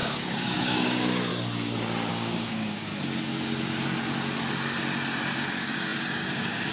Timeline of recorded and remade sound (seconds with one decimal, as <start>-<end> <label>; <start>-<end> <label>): 0.0-1.3 remade; 1.3-2.1 recorded; 2.1-2.9 remade; 2.9-5.5 recorded; 5.5-6.7 remade